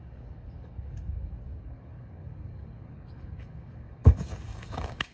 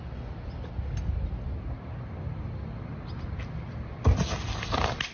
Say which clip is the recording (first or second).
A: second